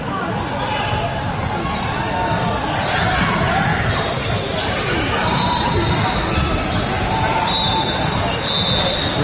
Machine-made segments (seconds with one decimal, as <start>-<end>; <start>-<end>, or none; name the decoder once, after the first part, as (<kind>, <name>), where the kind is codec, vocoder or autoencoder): 3.7-5.4 (vocoder, BigVGAN v2)